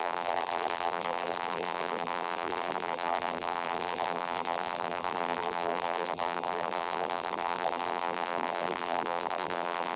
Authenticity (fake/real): fake